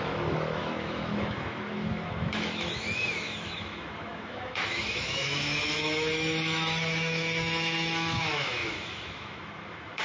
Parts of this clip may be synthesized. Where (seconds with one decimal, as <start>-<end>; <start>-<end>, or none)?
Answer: 0.0-10.0